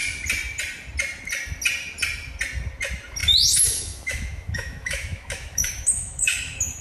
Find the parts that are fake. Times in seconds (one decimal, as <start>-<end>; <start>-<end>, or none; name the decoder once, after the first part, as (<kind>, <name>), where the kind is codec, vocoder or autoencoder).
3.2-6.8 (autoencoder, DAC-VAE)